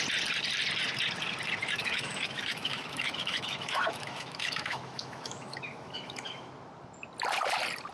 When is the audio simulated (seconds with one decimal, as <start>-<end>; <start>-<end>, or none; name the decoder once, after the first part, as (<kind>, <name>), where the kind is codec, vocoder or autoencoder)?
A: 1.8-6.5 (autoencoder, DAC-VAE)